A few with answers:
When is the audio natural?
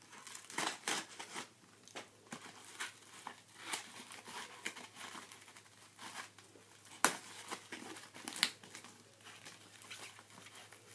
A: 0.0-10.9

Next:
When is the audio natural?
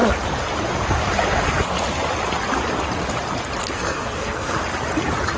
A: 0.0-3.6; 4.6-5.4